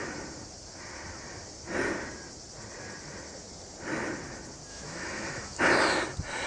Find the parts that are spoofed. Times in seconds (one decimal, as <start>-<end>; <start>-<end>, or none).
4.7-5.6